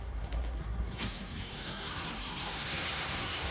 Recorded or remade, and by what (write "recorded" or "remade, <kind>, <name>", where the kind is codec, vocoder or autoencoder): remade, codec, SNAC